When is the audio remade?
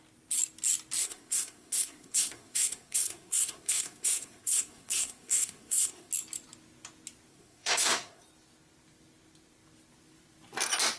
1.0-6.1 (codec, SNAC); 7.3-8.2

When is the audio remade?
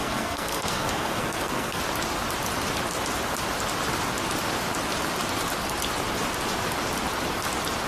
0.0-1.8 (codec, SNAC)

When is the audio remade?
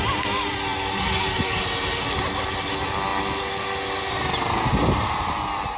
none